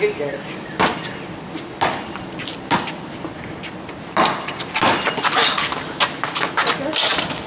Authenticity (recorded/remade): recorded